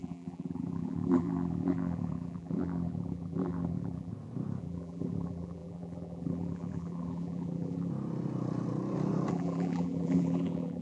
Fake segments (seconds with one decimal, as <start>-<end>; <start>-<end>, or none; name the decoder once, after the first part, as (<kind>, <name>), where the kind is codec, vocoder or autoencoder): 0.0-4.1 (vocoder, BigVGAN v2); 4.6-7.9; 9.3-10.8